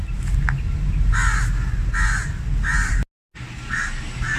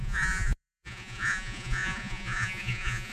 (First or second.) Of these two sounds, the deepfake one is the second